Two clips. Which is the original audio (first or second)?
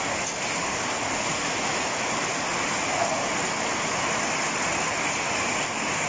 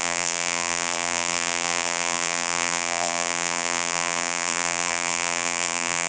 first